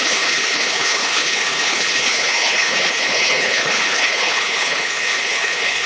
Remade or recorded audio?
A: remade